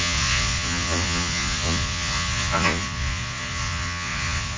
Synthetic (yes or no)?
yes